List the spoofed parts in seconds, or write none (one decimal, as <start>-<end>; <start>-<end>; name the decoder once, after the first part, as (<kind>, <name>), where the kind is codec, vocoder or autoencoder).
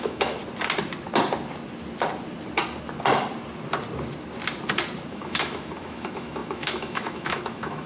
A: 0.0-0.4 (autoencoder, DAC-VAE); 5.1-7.9